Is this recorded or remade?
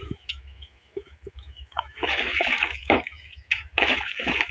remade